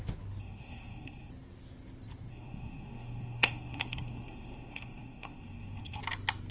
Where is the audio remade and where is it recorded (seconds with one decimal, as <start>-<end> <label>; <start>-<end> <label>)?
0.0-0.4 recorded; 0.4-1.3 remade; 1.3-2.3 recorded; 2.3-6.0 remade; 6.0-6.5 recorded